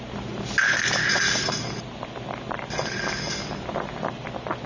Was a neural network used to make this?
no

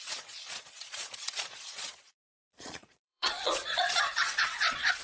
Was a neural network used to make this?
yes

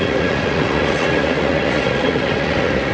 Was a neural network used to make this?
yes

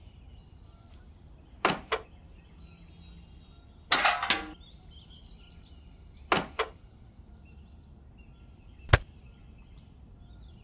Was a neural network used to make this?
no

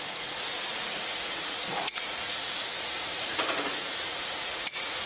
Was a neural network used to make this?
yes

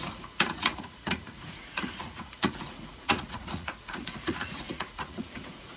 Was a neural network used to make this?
yes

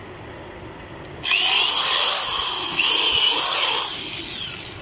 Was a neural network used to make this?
no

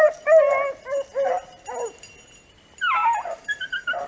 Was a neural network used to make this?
no